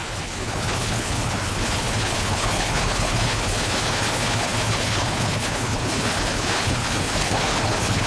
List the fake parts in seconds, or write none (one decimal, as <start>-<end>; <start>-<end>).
0.0-8.1